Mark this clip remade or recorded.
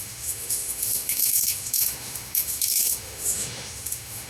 remade